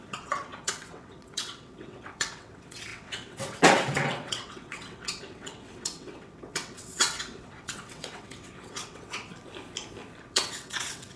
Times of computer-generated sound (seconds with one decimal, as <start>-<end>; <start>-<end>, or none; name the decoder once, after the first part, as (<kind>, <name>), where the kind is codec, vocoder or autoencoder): 0.0-9.3 (vocoder, WaveNeXt); 10.2-11.2

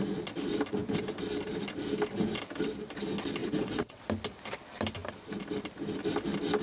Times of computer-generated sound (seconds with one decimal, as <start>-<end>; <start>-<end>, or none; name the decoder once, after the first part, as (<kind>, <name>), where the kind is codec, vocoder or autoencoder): 3.4-4.0 (vocoder, WaveNeXt)

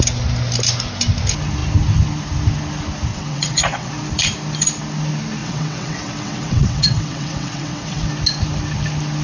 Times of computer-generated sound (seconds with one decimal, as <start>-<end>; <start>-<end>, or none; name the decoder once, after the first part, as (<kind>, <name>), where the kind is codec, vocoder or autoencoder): 3.1-3.9 (vocoder, WaveNeXt); 5.4-8.1